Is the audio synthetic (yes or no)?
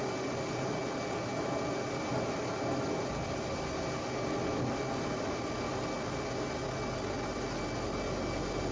no